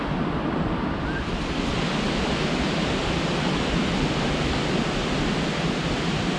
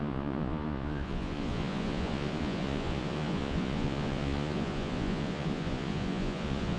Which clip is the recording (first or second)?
first